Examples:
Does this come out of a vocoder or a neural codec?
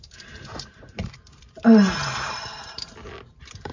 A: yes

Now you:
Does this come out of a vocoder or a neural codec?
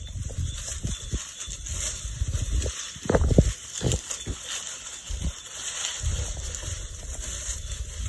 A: yes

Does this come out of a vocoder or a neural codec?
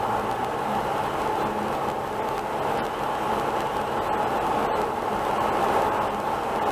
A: no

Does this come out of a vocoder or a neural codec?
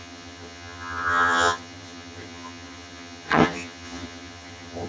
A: yes